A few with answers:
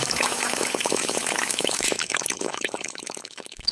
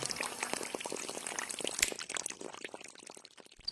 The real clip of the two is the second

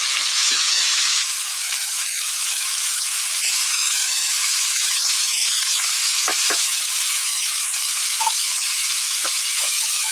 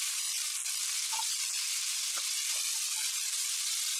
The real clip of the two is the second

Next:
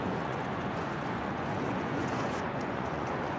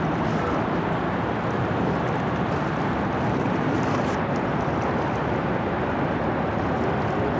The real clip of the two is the second